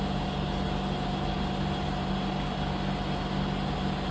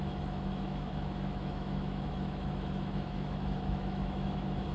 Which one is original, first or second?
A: first